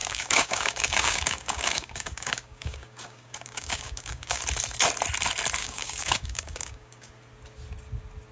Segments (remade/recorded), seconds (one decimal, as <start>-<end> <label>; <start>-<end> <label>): 0.0-4.4 remade; 4.4-5.6 recorded; 5.6-7.1 remade; 7.1-8.3 recorded